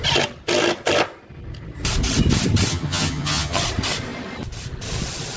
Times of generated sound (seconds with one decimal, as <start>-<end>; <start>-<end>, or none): 2.7-3.6